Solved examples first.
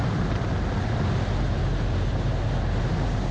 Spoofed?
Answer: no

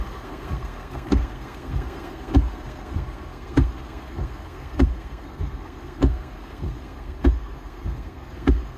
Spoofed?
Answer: yes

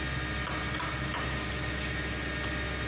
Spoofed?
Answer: no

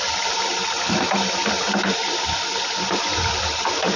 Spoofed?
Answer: no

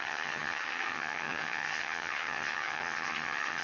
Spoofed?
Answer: yes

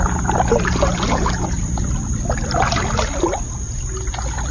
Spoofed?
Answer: no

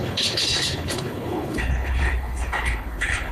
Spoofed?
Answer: yes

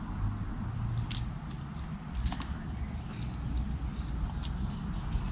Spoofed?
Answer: no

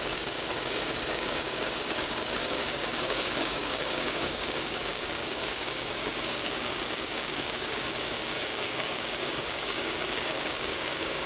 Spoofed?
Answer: yes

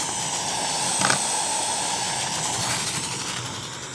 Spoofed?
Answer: no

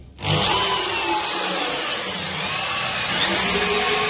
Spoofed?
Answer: no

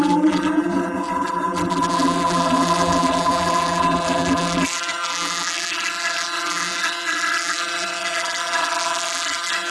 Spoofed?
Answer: yes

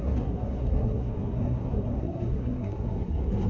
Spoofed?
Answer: yes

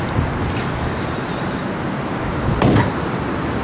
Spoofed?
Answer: no